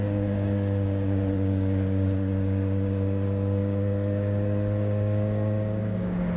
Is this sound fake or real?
fake